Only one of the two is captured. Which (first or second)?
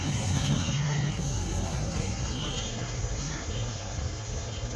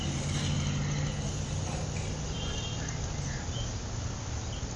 second